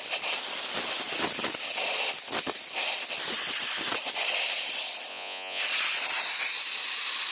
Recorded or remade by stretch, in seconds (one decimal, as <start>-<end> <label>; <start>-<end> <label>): 0.0-5.1 recorded; 5.1-5.6 remade; 5.6-7.3 recorded